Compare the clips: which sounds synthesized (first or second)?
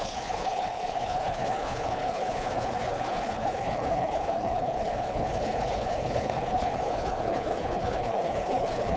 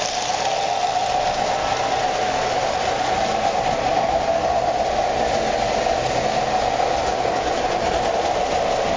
first